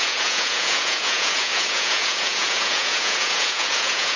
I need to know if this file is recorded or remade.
remade